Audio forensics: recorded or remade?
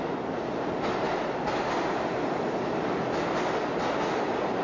recorded